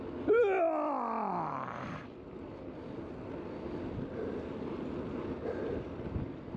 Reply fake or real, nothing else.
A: real